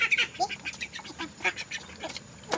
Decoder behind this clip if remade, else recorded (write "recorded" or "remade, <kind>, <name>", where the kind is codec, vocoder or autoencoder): recorded